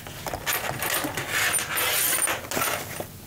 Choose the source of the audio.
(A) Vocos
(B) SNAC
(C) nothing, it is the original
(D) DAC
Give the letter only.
C